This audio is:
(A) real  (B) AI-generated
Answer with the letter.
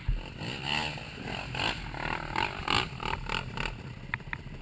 A